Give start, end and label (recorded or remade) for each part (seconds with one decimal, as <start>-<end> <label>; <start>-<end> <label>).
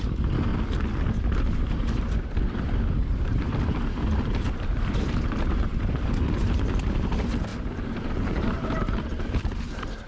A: 0.0-0.5 remade; 0.5-1.4 recorded; 1.4-10.1 remade